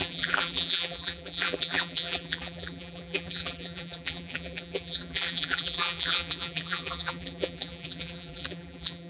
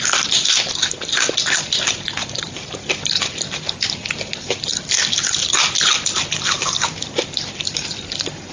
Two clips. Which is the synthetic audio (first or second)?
first